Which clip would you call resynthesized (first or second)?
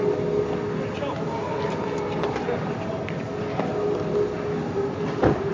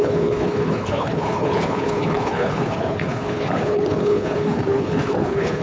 second